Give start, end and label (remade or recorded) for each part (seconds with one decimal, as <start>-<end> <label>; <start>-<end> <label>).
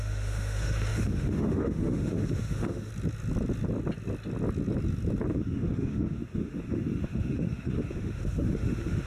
0.0-2.9 remade; 2.9-5.3 recorded; 5.3-9.1 remade